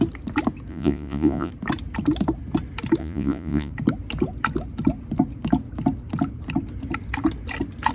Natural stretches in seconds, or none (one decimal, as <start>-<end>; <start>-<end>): 0.0-0.7; 1.5-3.0; 3.7-7.9